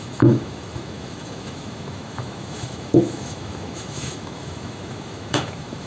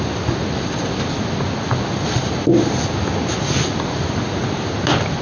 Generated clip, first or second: first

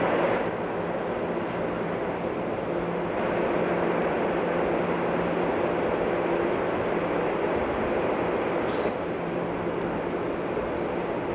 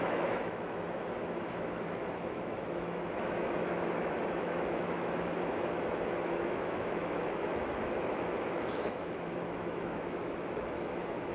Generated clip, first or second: second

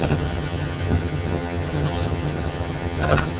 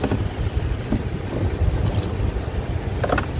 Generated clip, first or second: first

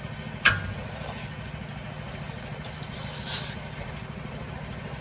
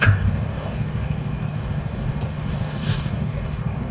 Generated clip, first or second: second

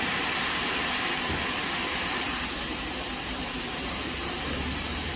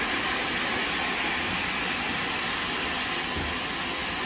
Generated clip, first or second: first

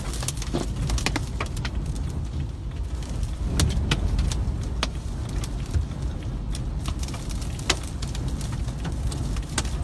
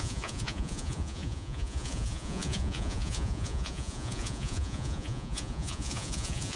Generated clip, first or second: second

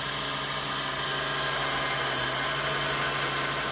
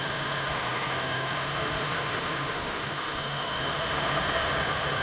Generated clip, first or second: second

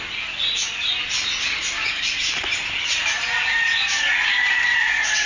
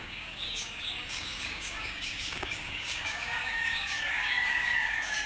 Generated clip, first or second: second